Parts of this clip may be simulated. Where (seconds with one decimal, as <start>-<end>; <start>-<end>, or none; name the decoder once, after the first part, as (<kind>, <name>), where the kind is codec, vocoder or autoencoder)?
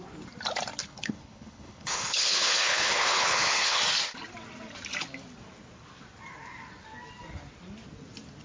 0.8-3.8 (codec, HILCodec)